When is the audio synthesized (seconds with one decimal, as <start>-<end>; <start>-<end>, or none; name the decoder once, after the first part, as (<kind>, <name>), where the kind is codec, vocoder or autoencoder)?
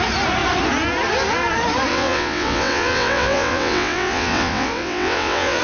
1.9-5.6 (vocoder, WaveNeXt)